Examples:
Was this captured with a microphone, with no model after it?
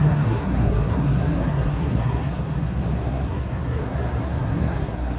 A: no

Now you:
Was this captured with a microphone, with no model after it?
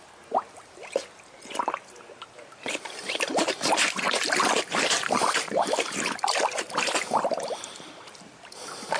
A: yes